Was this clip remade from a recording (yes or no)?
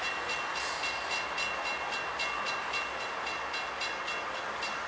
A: no